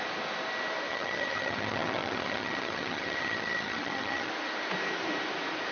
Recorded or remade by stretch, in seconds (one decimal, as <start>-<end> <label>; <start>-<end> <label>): 0.0-0.9 recorded; 0.9-4.3 remade; 4.3-5.7 recorded